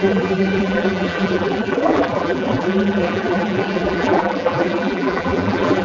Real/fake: fake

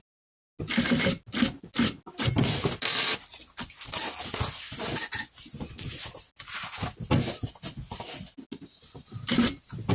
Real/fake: real